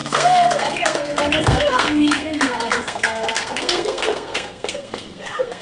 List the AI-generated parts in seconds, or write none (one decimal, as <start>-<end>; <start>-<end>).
0.0-5.6